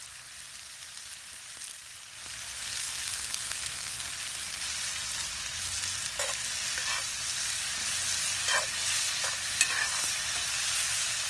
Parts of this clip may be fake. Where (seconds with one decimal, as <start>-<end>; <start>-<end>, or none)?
2.5-4.1